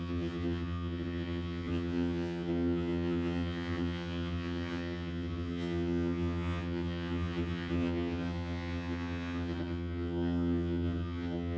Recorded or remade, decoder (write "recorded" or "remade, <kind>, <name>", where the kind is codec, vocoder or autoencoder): remade, vocoder, HiFi-GAN